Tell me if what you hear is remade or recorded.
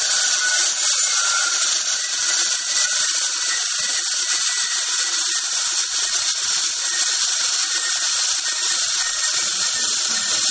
recorded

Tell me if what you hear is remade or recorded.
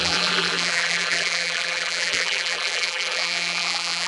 remade